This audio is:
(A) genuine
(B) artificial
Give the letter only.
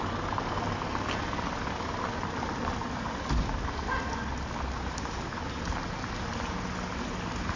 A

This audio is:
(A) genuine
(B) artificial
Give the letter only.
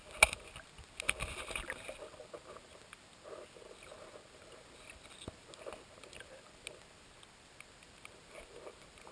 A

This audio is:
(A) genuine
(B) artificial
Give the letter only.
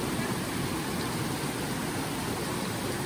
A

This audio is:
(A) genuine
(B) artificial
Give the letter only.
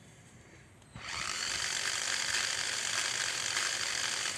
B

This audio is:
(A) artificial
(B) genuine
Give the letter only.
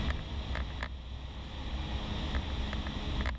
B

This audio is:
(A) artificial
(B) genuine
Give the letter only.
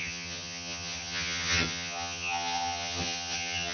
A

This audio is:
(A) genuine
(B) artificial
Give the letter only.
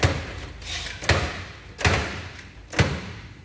A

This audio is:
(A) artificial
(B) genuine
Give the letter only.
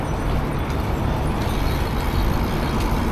B